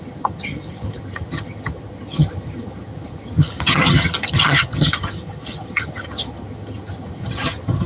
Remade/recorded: remade